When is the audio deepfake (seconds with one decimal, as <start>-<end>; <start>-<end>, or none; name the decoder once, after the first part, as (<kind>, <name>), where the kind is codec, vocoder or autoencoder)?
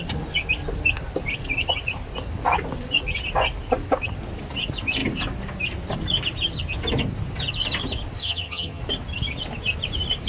8.2-8.8 (vocoder, HiFi-GAN)